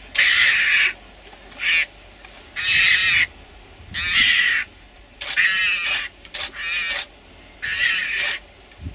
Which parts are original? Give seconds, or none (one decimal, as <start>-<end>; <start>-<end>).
0.0-8.9